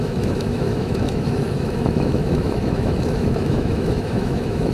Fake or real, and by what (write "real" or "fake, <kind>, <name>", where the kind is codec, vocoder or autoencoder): fake, autoencoder, DAC-VAE